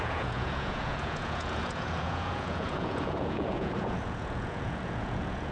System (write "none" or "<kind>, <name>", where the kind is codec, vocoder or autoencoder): vocoder, Vocos